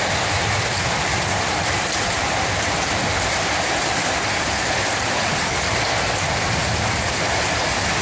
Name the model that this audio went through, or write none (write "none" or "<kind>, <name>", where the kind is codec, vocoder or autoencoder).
none